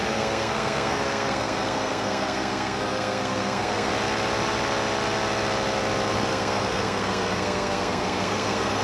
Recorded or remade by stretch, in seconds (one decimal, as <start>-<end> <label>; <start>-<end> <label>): 0.0-3.9 remade; 3.9-6.3 recorded; 6.3-8.8 remade